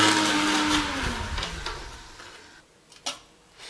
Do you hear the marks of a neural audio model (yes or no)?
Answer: no